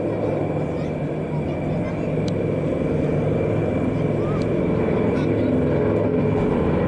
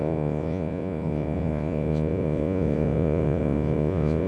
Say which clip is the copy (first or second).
second